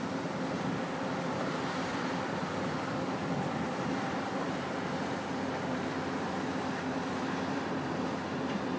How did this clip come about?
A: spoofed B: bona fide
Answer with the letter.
A